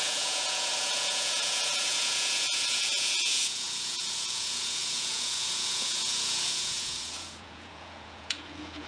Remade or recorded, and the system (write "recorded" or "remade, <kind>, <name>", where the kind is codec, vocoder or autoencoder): remade, vocoder, Vocos